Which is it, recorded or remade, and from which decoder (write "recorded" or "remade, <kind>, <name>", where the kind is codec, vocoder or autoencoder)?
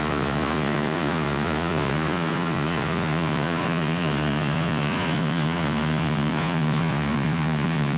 remade, vocoder, Vocos